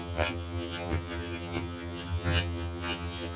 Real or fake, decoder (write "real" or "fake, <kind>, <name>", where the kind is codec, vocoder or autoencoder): fake, vocoder, HiFi-GAN